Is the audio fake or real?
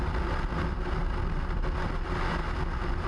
real